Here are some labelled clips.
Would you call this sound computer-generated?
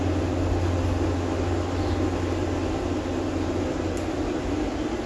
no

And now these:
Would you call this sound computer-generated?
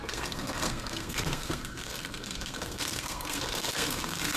yes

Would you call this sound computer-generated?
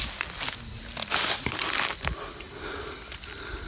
no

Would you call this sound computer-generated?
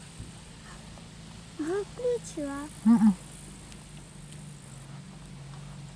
no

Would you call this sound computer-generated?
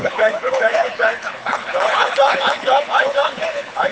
yes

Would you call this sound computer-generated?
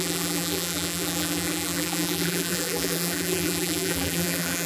yes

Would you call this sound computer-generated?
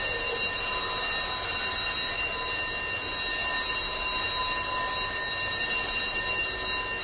no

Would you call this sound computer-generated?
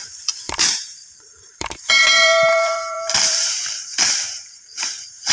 yes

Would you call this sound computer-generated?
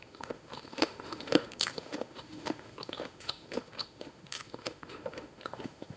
yes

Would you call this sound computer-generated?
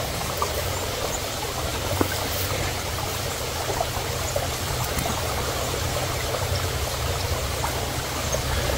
no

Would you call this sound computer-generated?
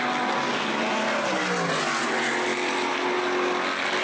no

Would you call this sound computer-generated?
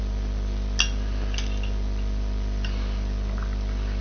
no